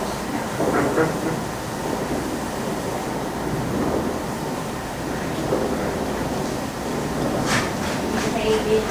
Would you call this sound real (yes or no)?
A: yes